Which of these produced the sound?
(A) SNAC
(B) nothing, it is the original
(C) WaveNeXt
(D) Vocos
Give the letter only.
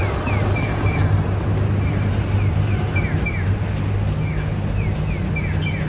B